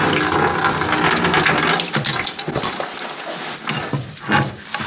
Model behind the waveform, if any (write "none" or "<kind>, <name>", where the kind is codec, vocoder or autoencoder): none